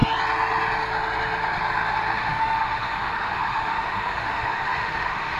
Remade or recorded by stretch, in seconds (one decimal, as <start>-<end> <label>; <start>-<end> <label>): 0.0-2.2 recorded; 2.2-5.4 remade